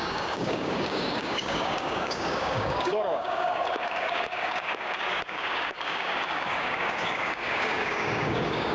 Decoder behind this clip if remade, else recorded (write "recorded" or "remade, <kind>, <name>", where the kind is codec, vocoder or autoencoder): remade, codec, DAC